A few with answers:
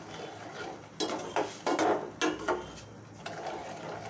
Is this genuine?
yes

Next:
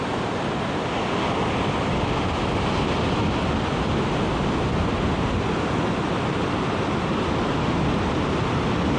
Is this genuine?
yes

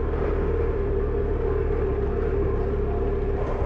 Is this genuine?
yes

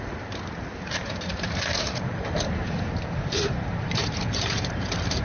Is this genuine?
no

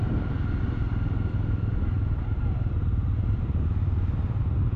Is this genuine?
no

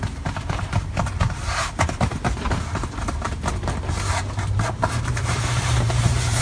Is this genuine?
no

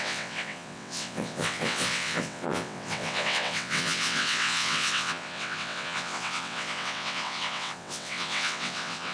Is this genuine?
no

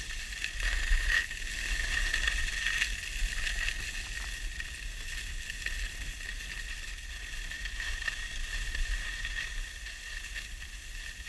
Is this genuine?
yes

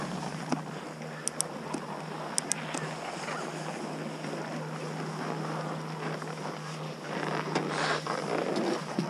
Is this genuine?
yes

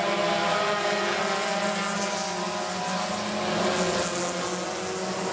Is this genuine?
yes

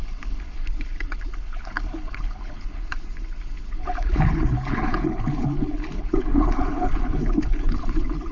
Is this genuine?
no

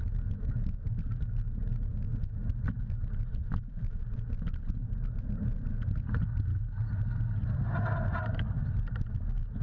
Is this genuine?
yes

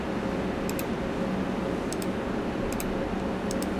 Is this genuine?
yes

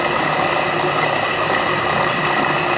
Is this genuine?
yes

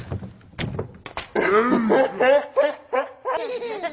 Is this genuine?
yes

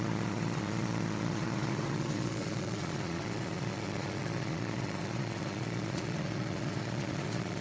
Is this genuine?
no